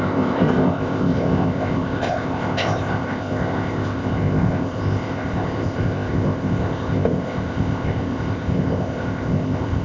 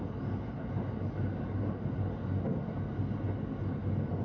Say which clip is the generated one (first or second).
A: first